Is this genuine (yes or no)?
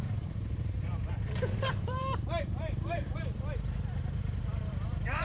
no